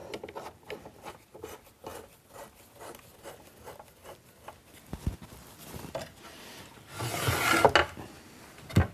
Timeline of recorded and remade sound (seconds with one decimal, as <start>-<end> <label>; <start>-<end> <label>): 0.0-8.9 recorded